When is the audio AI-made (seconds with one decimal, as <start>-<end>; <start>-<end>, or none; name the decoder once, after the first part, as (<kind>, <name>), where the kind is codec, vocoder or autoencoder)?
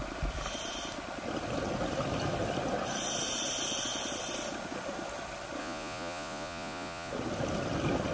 5.6-7.1 (vocoder, Vocos)